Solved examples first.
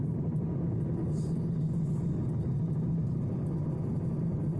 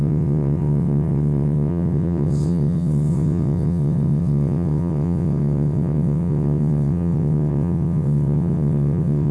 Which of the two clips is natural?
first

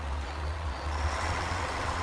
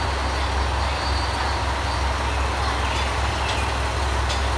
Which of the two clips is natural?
second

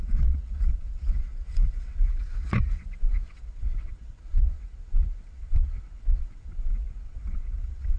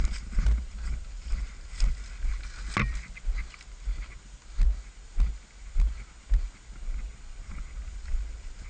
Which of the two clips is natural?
second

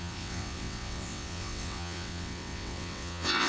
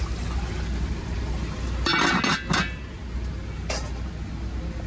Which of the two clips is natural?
second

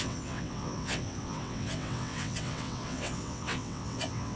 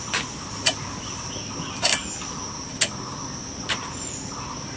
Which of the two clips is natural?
second